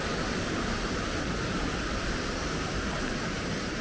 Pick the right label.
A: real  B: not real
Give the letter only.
A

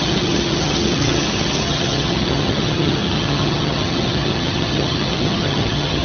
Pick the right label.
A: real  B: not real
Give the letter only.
B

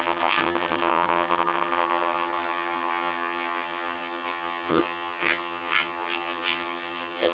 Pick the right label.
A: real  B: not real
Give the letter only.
B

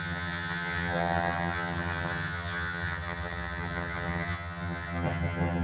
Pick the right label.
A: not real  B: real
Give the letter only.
A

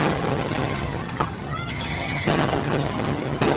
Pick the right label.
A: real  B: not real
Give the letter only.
B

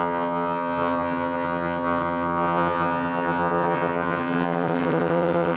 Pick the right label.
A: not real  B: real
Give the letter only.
A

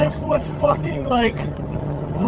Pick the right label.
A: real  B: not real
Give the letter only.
B